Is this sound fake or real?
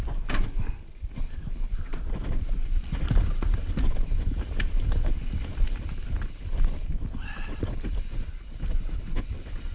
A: real